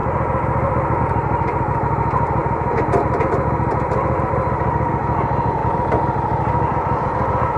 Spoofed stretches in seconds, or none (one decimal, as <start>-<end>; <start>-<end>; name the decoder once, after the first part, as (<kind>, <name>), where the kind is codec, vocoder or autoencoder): 5.6-7.6 (vocoder, BigVGAN v2)